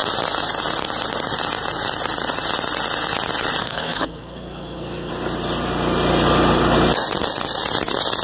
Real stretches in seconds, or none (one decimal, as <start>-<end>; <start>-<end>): 0.0-3.6; 5.1-8.2